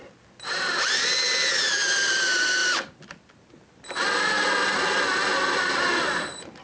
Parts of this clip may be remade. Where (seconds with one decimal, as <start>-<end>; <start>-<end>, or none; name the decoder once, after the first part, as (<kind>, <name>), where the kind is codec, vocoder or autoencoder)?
none